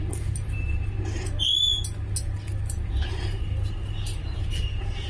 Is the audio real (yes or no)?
yes